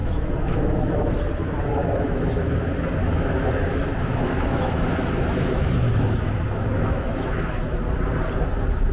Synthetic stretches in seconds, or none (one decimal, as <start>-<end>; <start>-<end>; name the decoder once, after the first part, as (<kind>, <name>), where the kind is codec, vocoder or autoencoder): 0.0-1.2 (autoencoder, DAC-VAE); 1.8-2.5; 3.0-7.8